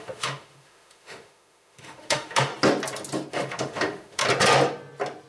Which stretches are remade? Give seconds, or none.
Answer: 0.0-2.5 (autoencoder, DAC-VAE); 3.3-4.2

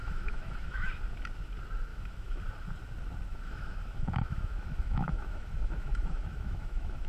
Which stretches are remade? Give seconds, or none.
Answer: 0.0-0.9 (autoencoder, DAC-VAE); 1.9-2.4; 3.3-7.1

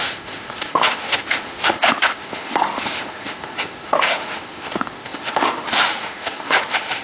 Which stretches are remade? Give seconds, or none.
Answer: 0.0-7.0 (autoencoder, DAC-VAE)

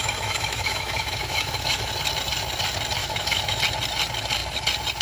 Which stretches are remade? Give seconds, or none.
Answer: 0.0-1.9 (autoencoder, DAC-VAE); 3.0-3.6

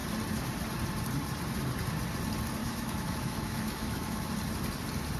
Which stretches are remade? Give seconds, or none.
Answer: 2.6-4.3 (autoencoder, DAC-VAE)